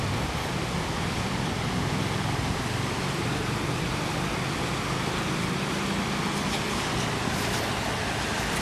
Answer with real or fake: real